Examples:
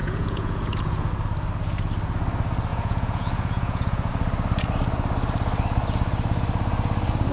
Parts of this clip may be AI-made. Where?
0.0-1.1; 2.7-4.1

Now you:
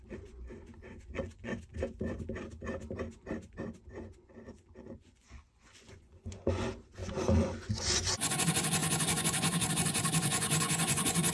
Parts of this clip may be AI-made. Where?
0.0-1.5; 3.9-11.3

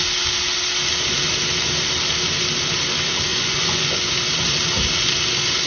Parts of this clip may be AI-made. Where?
3.3-4.1

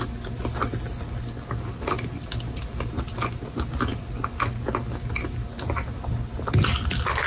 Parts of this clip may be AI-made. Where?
none

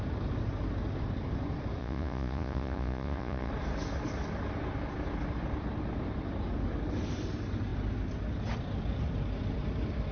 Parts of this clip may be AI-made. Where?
1.8-3.5

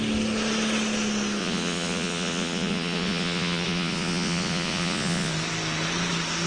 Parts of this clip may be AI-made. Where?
1.4-5.3